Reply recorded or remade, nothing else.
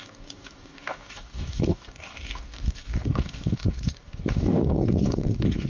remade